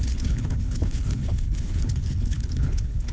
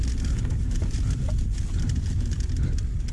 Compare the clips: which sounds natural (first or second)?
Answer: second